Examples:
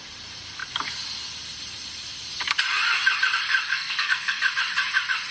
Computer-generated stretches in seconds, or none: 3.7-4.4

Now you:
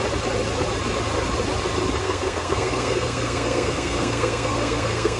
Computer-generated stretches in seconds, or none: 2.0-5.2

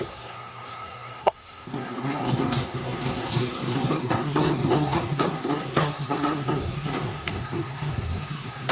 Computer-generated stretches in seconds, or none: 0.0-8.7

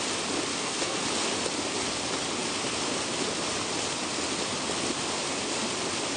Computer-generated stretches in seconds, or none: 0.5-1.0

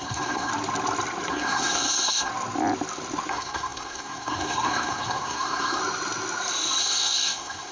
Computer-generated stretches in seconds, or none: 0.0-0.5; 1.3-2.3; 3.3-5.8; 6.8-7.7

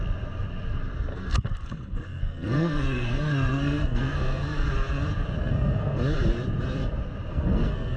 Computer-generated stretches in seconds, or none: 1.1-4.7; 5.4-6.0; 7.3-8.0

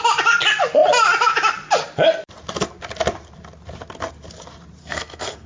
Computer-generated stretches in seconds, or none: 4.8-5.5

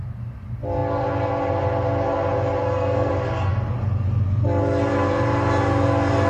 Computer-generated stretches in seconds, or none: 2.6-3.1